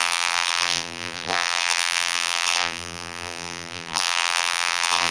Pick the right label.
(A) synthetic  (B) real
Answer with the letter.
A